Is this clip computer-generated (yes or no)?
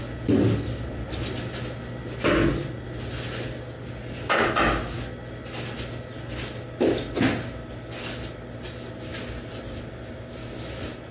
no